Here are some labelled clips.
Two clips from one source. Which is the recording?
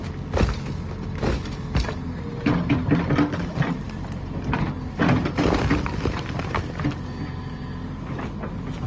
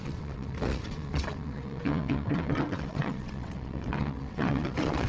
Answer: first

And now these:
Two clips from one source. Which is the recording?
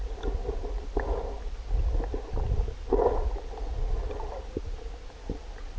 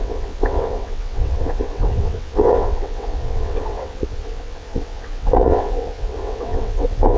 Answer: first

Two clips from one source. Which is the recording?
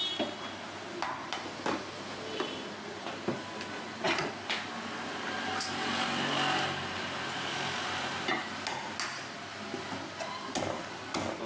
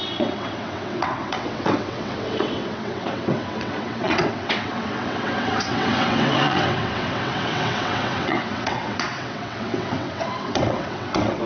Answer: first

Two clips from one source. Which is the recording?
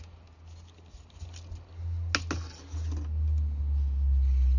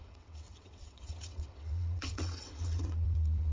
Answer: first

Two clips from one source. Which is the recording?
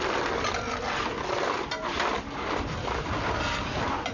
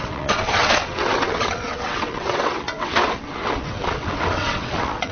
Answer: first